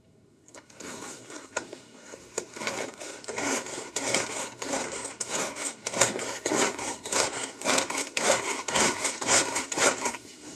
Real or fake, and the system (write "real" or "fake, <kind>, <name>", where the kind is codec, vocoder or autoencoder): fake, codec, SNAC